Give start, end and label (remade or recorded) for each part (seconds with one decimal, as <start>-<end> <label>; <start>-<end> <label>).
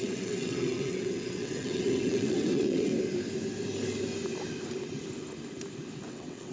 0.0-2.9 remade; 2.9-6.1 recorded; 6.1-6.5 remade